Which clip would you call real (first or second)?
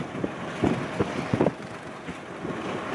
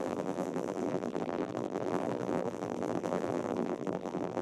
first